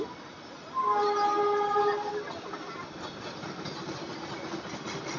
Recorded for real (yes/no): yes